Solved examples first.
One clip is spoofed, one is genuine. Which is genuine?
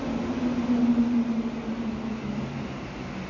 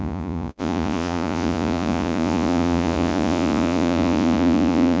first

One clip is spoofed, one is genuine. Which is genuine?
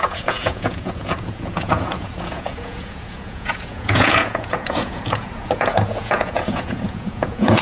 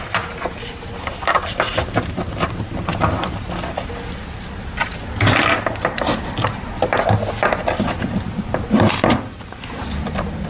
second